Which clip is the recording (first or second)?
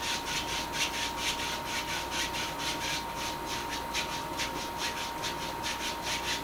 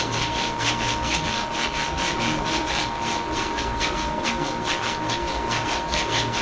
first